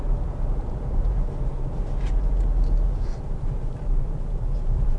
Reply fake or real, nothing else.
fake